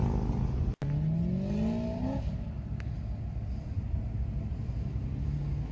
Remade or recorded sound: recorded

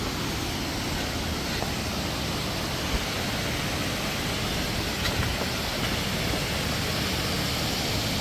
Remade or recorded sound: recorded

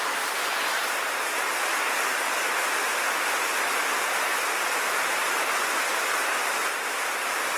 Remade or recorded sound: recorded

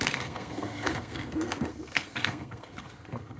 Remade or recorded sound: remade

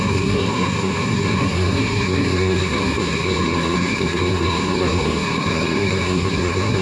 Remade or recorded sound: remade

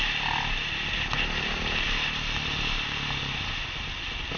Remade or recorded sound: recorded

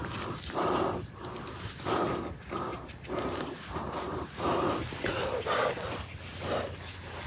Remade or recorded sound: recorded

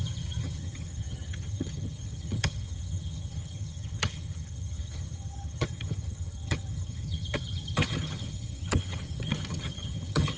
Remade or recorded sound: remade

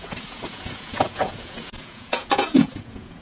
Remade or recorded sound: remade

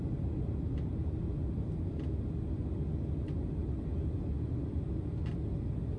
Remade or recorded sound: recorded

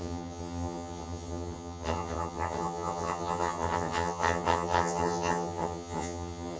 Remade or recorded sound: remade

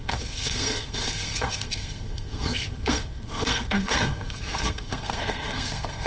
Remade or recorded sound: remade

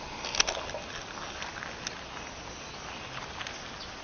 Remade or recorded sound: recorded